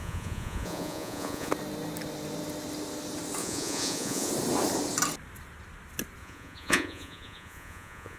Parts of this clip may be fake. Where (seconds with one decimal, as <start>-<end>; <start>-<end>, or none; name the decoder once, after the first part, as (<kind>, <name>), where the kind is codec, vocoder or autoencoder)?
0.0-1.5 (vocoder, Vocos); 3.4-4.3; 6.2-8.2